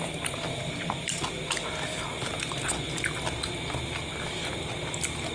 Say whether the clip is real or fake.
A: real